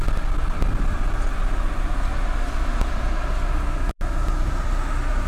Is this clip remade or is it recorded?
recorded